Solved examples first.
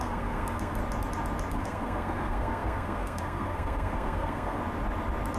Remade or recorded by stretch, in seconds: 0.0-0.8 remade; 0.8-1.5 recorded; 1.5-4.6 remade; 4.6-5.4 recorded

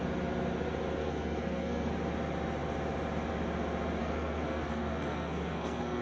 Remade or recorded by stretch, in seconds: 0.0-1.0 recorded; 1.0-1.9 remade; 1.9-4.0 recorded; 4.0-6.0 remade